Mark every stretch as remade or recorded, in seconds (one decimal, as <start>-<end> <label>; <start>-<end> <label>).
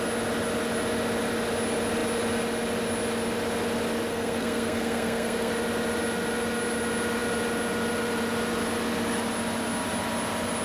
0.0-4.1 recorded; 4.1-5.5 remade; 5.5-10.6 recorded